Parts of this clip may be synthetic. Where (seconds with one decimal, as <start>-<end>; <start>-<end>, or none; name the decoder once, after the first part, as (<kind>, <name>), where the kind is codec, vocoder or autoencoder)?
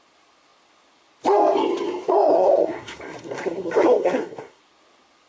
2.3-4.6 (codec, SNAC)